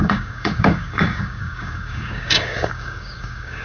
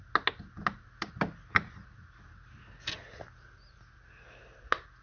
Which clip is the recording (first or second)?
second